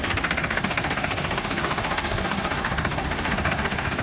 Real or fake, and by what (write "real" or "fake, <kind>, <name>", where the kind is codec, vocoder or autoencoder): fake, codec, SNAC